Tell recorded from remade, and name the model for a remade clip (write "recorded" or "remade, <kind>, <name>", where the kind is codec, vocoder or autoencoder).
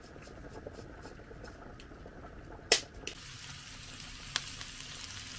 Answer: recorded